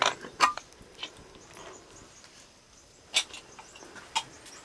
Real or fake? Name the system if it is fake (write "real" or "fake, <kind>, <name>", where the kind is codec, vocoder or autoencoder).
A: real